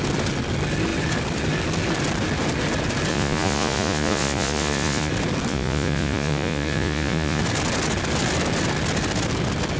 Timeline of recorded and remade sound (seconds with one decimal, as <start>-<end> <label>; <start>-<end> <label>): 0.0-3.1 recorded; 3.1-5.1 remade; 5.1-5.5 recorded; 5.5-7.4 remade; 7.4-9.8 recorded